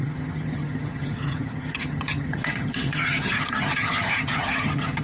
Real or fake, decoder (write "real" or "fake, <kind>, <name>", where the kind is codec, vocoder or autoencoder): fake, vocoder, HiFi-GAN